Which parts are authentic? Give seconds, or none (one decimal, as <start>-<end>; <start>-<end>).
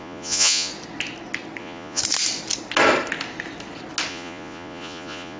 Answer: 0.7-1.6; 2.0-4.1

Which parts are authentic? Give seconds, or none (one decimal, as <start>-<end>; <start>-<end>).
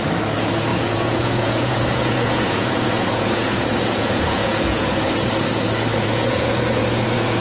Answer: 0.0-0.7; 5.1-5.9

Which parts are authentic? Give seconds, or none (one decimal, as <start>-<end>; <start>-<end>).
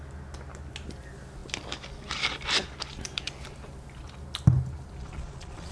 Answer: 0.0-5.0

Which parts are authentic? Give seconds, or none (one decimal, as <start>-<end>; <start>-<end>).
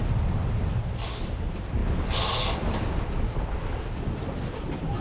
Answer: 0.0-5.0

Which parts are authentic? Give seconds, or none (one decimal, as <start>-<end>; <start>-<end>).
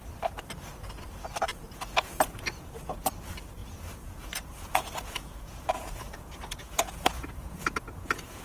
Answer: 0.0-1.5; 3.1-3.6